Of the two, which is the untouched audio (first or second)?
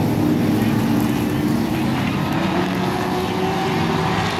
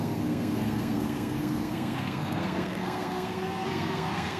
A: first